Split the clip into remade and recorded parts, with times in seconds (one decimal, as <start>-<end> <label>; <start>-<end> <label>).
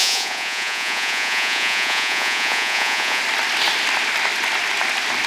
0.0-3.2 remade; 3.2-5.3 recorded